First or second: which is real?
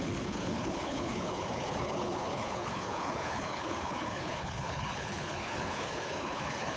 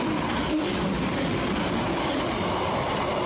second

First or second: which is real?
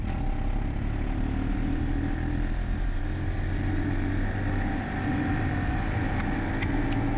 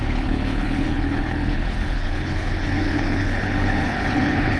first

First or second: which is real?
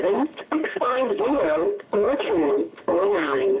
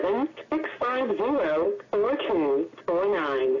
second